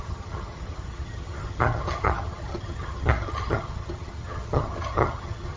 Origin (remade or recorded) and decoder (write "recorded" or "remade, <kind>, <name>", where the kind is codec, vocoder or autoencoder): remade, vocoder, HiFi-GAN